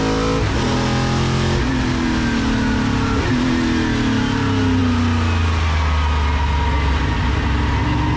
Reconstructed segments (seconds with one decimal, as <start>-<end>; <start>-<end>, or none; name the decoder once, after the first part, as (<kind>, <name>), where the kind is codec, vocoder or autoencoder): none